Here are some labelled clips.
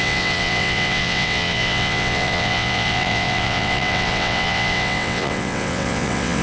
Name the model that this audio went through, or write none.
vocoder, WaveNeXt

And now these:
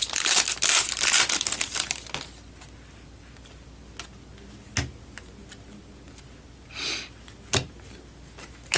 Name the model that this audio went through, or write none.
none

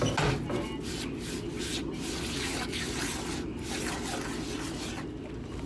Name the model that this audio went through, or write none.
none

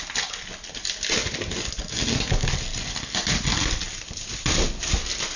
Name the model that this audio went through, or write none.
none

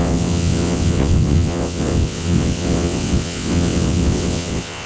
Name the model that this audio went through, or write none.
vocoder, WaveNeXt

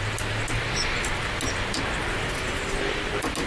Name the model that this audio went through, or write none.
none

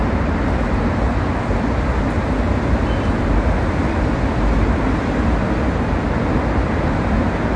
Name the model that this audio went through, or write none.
none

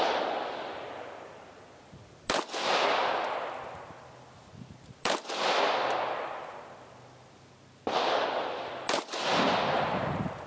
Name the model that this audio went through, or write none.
none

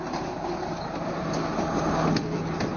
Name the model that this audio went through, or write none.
none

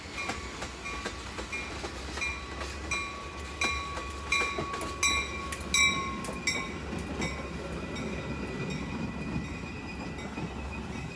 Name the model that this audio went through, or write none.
none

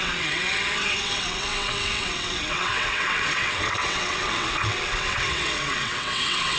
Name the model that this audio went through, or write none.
vocoder, WaveNeXt